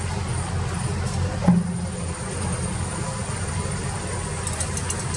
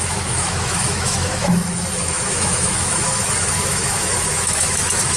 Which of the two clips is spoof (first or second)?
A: second